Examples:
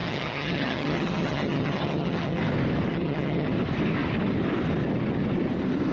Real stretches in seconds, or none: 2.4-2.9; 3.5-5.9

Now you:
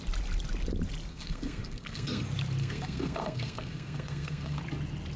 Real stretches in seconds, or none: 0.0-1.1; 2.2-2.6; 4.6-5.2

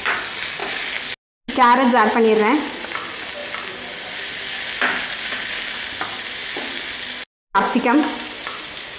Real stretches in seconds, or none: 0.0-9.0

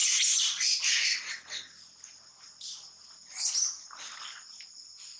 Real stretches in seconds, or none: 0.0-5.2

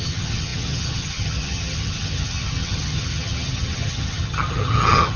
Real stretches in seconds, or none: none